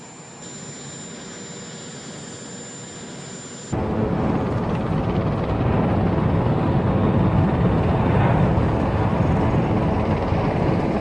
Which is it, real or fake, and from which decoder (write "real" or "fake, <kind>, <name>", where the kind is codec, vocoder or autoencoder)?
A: real